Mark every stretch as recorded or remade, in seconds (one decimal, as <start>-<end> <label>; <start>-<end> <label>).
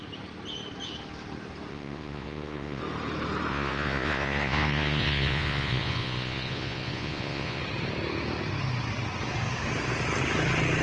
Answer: 0.0-1.7 recorded; 1.7-2.8 remade; 2.8-3.5 recorded; 3.5-7.6 remade; 7.6-10.8 recorded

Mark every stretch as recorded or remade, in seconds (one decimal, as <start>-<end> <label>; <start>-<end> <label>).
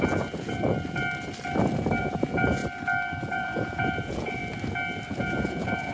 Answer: 0.0-1.0 remade; 1.0-2.0 recorded; 2.0-2.6 remade; 2.6-3.3 recorded; 3.3-4.4 remade; 4.4-5.1 recorded; 5.1-5.9 remade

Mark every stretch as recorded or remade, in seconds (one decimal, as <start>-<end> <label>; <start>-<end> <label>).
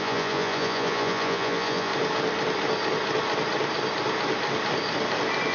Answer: 0.0-1.9 remade; 1.9-5.5 recorded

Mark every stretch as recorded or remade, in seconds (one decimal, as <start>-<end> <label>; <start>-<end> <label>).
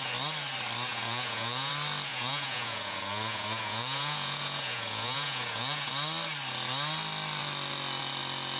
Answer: 0.0-0.9 recorded; 0.9-1.7 remade; 1.7-2.1 recorded; 2.1-5.9 remade; 5.9-8.6 recorded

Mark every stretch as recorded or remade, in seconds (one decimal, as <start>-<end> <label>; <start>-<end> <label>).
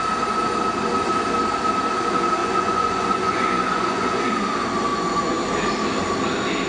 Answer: 0.0-2.4 recorded; 2.4-4.2 remade; 4.2-4.9 recorded; 4.9-5.4 remade; 5.4-6.7 recorded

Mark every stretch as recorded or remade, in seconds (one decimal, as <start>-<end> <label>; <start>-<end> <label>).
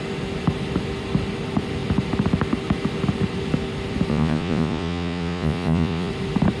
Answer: 0.0-4.1 recorded; 4.1-6.1 remade; 6.1-6.6 recorded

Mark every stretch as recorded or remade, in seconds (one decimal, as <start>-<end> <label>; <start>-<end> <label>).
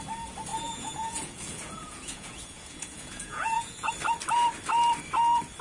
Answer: 0.0-0.5 recorded; 0.5-3.9 remade; 3.9-5.6 recorded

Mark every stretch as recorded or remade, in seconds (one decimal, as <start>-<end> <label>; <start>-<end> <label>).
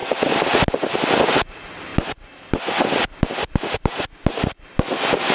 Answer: 0.0-5.3 recorded